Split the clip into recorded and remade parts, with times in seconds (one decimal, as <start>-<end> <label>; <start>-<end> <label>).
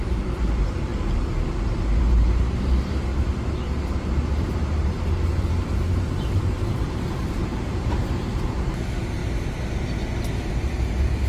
0.0-0.9 remade; 0.9-1.5 recorded; 1.5-3.1 remade; 3.1-3.9 recorded; 3.9-9.2 remade; 9.2-11.3 recorded